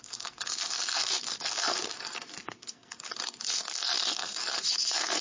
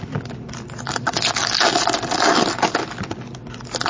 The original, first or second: second